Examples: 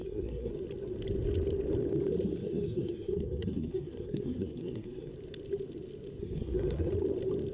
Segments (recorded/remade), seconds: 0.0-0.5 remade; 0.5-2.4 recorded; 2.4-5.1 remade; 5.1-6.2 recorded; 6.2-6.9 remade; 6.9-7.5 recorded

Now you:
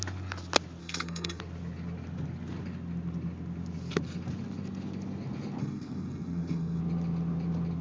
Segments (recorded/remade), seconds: 0.0-0.8 recorded; 0.8-1.4 remade; 1.4-5.6 recorded; 5.6-6.8 remade; 6.8-7.8 recorded

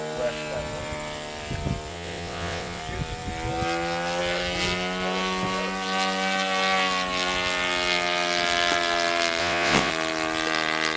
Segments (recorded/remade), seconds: 0.0-1.9 recorded; 1.9-2.8 remade; 2.8-9.4 recorded; 9.4-9.9 remade; 9.9-11.0 recorded